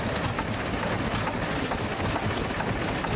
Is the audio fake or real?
real